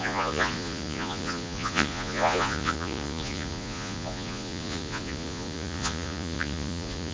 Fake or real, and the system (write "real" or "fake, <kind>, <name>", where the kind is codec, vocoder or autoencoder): fake, vocoder, Vocos